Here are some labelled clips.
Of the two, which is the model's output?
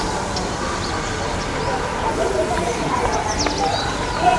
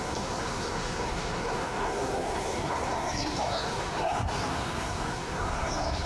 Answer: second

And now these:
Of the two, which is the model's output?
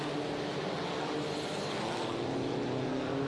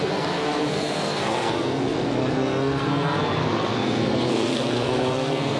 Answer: second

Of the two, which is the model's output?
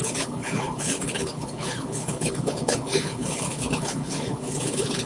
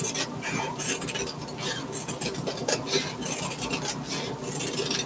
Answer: first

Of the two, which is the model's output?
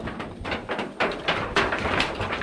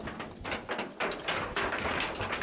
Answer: first